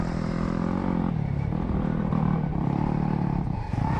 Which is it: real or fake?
real